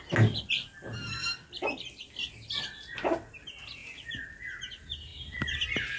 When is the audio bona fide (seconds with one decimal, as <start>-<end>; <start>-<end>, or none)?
0.0-0.9; 1.5-3.8; 4.6-5.1